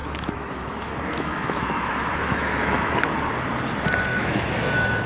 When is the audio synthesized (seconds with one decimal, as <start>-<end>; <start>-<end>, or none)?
0.0-3.0; 4.1-5.1